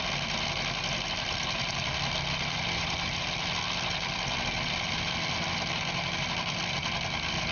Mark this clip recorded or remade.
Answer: recorded